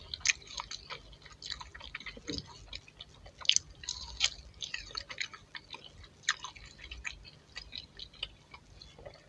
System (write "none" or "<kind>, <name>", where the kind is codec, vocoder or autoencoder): none